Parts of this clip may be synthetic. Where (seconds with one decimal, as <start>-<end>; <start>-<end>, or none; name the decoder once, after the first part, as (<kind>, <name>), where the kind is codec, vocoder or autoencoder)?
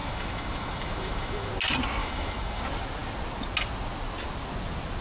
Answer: 0.0-1.5 (autoencoder, DAC-VAE); 2.0-2.6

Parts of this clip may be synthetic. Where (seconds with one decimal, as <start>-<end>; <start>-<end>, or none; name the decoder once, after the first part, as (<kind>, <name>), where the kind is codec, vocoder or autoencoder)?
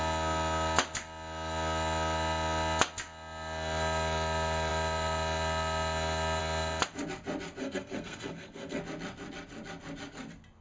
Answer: 7.6-8.8 (codec, SNAC)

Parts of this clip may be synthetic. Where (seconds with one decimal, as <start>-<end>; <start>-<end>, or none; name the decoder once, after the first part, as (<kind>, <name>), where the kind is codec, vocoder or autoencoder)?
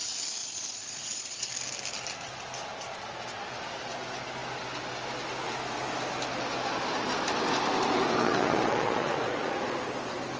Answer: 0.4-1.5 (vocoder, Vocos); 8.2-9.8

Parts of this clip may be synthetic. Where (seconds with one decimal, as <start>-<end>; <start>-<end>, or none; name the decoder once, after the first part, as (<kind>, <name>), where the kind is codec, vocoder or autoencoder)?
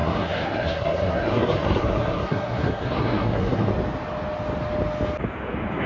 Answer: 0.0-3.7 (codec, SNAC)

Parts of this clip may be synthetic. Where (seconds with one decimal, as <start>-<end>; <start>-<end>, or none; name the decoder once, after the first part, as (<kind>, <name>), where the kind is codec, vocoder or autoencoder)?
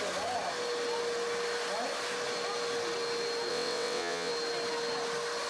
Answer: 3.5-4.3 (vocoder, WaveNeXt)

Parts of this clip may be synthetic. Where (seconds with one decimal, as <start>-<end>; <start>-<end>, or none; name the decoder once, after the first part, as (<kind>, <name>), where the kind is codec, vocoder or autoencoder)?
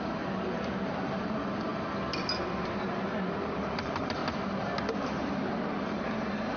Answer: 0.0-1.7 (vocoder, BigVGAN v2); 2.4-4.2; 5.2-6.6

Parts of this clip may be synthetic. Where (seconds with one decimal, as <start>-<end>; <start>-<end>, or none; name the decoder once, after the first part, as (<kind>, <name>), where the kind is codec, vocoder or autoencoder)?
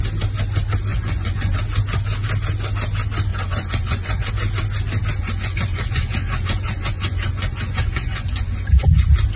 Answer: 0.9-1.6 (vocoder, Vocos); 3.3-4.3; 5.2-9.0